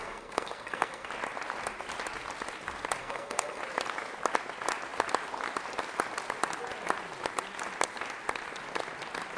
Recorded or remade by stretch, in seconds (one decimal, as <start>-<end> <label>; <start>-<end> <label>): 0.0-1.1 remade; 1.1-3.0 recorded; 3.0-3.6 remade; 3.6-9.4 recorded